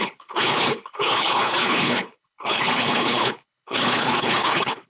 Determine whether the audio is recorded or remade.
remade